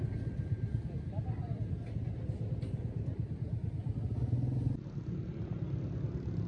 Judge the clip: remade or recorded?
recorded